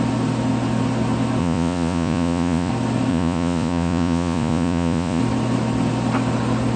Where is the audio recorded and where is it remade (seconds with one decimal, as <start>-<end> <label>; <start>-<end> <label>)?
0.0-1.4 recorded; 1.4-2.7 remade; 2.7-3.1 recorded; 3.1-5.2 remade; 5.2-6.8 recorded